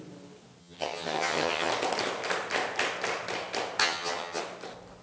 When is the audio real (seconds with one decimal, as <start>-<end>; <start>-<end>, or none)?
0.0-0.6; 1.7-3.8; 4.4-5.0

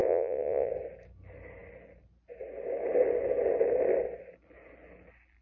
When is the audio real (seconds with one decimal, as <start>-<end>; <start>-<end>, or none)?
0.7-5.4